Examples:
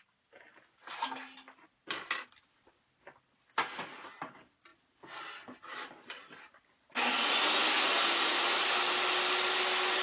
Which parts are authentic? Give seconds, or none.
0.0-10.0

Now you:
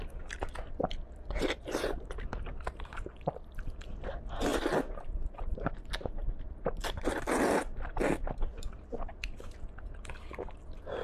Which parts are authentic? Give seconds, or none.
0.0-4.5; 7.1-8.5; 9.7-11.0

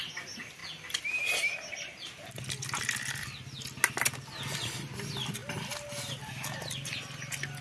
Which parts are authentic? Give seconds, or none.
0.6-4.4; 5.4-6.1

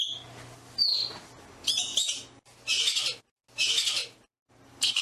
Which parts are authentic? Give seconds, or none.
0.0-5.0